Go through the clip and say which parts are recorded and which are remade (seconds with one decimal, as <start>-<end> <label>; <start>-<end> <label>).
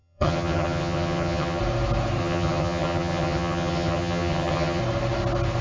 0.0-1.6 remade; 1.6-2.2 recorded; 2.2-4.8 remade; 4.8-5.6 recorded